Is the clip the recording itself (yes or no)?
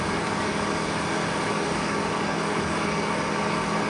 no